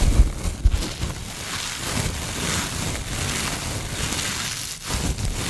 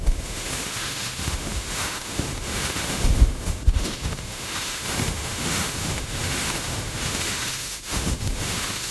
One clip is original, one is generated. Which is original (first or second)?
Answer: first